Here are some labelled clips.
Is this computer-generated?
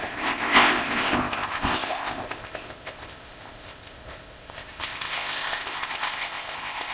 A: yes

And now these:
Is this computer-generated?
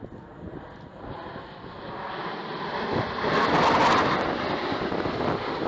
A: no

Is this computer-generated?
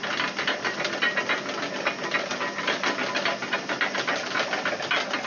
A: no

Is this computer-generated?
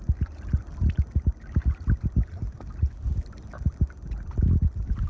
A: no